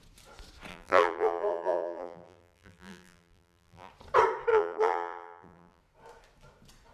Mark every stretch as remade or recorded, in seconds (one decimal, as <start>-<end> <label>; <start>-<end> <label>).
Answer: 0.0-0.7 recorded; 0.7-3.9 remade; 3.9-4.5 recorded; 4.5-5.8 remade; 5.8-6.9 recorded